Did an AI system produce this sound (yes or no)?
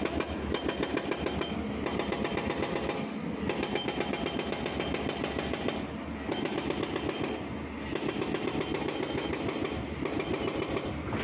no